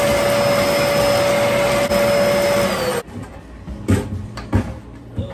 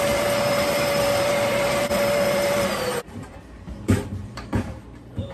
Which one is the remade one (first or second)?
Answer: second